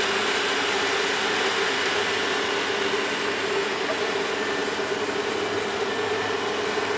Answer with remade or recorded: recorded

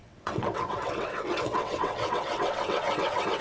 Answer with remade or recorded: remade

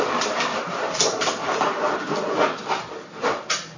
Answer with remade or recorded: recorded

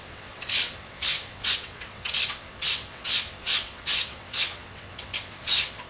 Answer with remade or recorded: remade